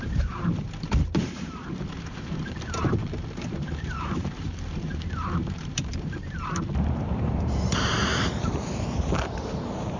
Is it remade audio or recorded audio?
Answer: remade